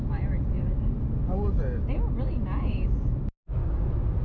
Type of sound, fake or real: real